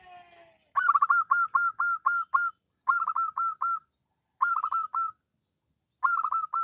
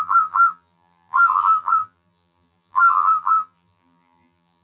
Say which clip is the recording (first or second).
first